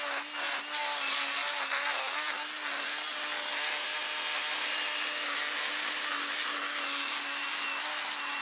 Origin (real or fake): real